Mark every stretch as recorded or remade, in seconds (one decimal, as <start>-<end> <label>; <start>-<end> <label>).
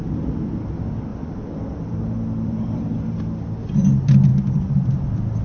0.0-1.1 recorded; 1.1-3.2 remade; 3.2-4.3 recorded; 4.3-4.9 remade; 4.9-5.4 recorded